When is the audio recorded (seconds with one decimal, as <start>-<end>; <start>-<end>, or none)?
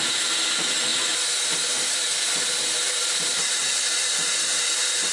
0.0-5.1